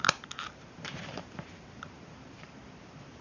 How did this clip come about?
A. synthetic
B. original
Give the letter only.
A